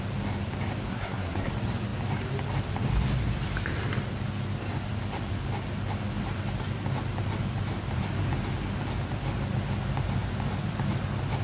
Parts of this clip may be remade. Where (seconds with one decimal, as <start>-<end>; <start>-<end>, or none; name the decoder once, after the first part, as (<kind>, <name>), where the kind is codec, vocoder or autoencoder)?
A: 0.9-1.5 (codec, SNAC)